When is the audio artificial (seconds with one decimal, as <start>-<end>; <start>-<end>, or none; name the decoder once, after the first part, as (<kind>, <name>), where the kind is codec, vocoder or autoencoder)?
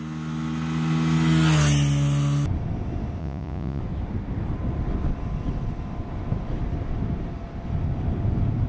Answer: 3.2-3.8 (vocoder, Vocos)